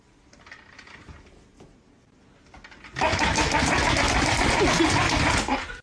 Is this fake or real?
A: real